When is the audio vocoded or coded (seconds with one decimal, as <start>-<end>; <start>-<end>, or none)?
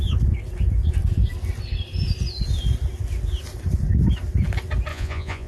4.9-5.5